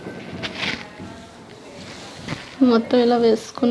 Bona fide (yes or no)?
yes